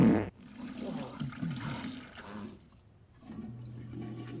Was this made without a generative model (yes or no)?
yes